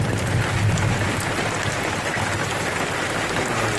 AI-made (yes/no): no